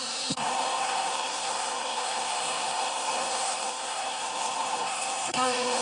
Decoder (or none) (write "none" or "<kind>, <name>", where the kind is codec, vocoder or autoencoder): codec, SNAC